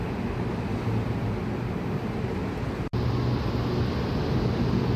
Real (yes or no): yes